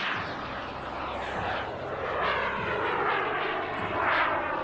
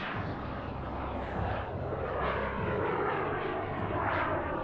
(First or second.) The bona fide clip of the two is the first